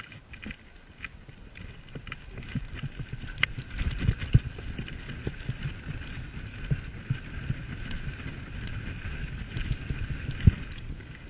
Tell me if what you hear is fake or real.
real